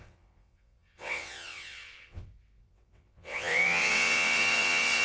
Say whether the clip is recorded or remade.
remade